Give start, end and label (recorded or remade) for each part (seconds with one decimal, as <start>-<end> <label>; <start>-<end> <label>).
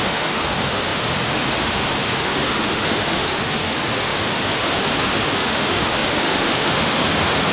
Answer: 0.0-7.5 remade